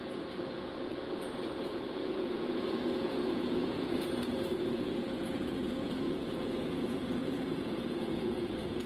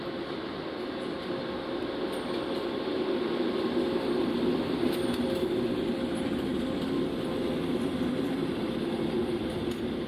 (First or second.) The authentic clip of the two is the second